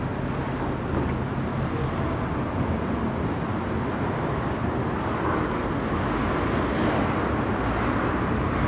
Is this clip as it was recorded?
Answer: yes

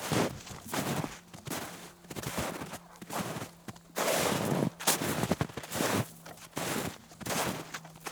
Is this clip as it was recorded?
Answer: yes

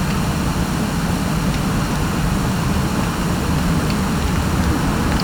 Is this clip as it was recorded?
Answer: yes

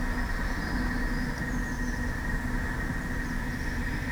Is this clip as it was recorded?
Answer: yes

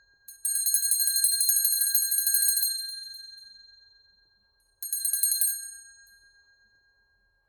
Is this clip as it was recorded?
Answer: yes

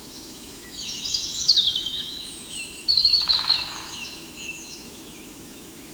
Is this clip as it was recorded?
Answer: no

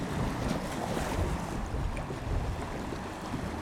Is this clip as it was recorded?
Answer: yes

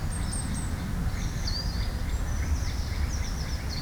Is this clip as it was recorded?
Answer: yes